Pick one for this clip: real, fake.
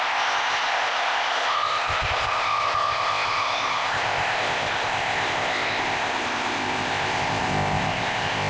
fake